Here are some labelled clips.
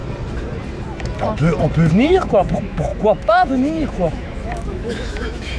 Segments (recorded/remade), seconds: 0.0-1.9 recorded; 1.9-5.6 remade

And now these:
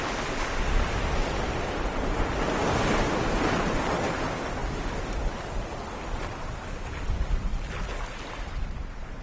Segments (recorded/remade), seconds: 0.0-9.2 recorded

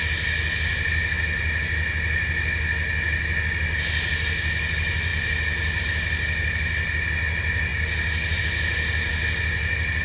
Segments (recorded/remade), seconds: 0.0-10.0 recorded

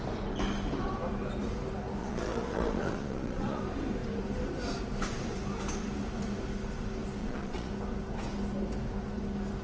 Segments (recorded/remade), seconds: 0.0-2.0 recorded; 2.0-3.6 remade; 3.6-7.2 recorded; 7.2-7.7 remade; 7.7-9.6 recorded